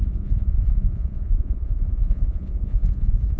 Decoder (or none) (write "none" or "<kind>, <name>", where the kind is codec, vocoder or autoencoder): vocoder, Vocos